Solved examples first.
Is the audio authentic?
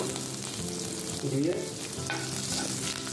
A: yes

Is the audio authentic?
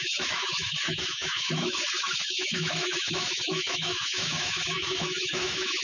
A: no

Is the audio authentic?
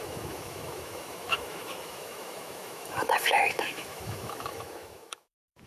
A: no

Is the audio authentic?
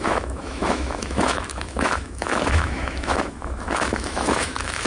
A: no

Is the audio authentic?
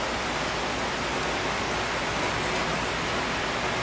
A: yes